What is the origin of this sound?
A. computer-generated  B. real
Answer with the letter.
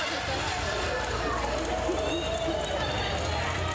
B